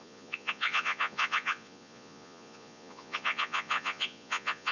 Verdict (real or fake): fake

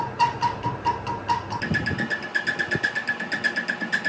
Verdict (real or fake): real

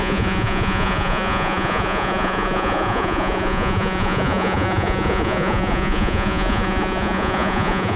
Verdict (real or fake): fake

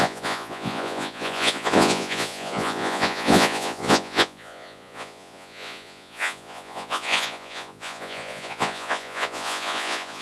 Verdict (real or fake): fake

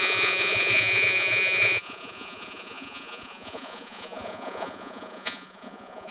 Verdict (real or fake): fake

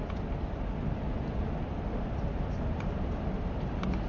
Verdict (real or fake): real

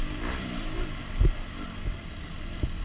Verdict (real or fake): real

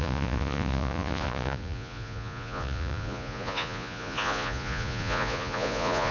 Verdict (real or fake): fake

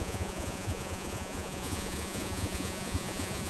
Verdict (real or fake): fake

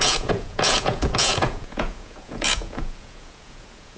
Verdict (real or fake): fake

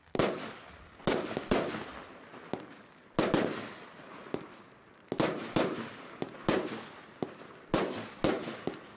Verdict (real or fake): real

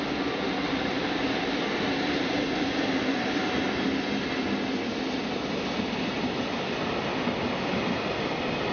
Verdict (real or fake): real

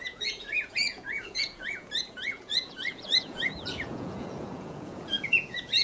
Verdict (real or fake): fake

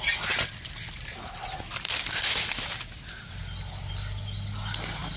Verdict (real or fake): real